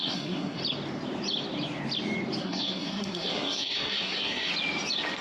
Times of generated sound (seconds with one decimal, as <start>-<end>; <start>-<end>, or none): 0.0-0.6; 2.4-4.5